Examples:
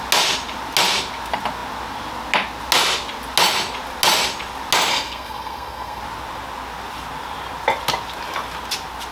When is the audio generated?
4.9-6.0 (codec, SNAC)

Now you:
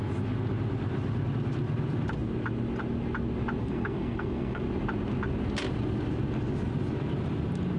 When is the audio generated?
3.6-4.6 (codec, SNAC)

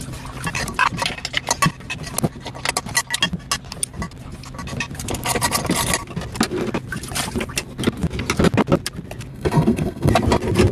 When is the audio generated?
9.3-10.1 (codec, SNAC)

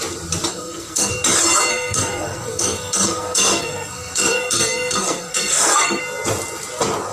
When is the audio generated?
0.5-1.1 (codec, SNAC); 1.7-6.0

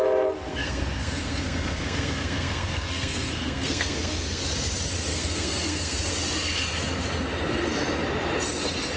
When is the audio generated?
0.5-4.4 (codec, SNAC); 5.1-6.1

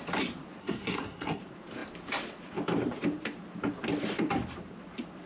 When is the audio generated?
0.6-1.4 (codec, SNAC)